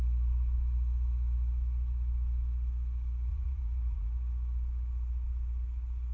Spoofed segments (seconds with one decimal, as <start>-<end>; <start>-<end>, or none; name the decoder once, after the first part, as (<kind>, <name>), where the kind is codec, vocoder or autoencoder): 3.3-4.1 (vocoder, Vocos)